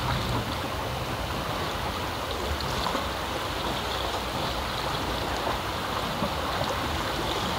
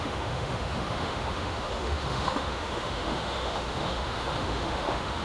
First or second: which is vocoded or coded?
second